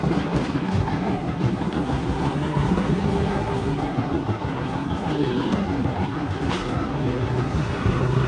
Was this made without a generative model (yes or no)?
no